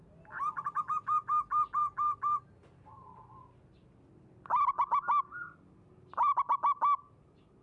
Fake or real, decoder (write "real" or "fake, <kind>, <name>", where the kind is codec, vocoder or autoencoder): real